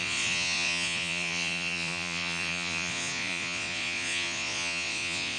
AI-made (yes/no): yes